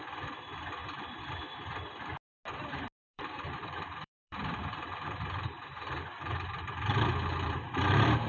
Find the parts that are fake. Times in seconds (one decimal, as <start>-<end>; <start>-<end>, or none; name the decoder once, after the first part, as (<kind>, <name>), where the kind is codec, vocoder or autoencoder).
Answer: 0.8-1.3 (vocoder, BigVGAN v2); 3.1-8.3